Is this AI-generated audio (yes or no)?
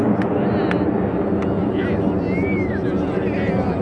no